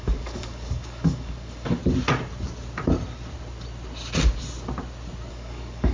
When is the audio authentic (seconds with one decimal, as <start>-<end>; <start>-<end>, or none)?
1.8-5.3